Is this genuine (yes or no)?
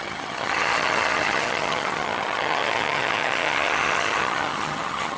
no